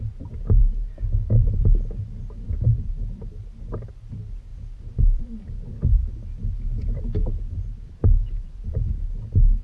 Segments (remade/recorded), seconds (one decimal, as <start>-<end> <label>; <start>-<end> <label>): 0.0-4.5 recorded; 4.5-5.2 remade; 5.2-6.0 recorded; 6.0-7.6 remade; 7.6-9.6 recorded